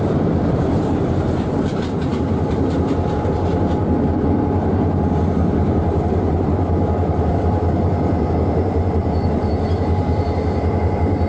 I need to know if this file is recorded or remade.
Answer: remade